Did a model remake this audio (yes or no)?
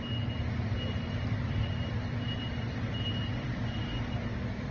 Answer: no